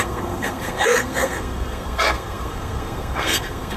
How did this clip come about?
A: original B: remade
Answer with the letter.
B